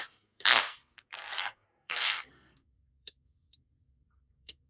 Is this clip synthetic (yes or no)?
yes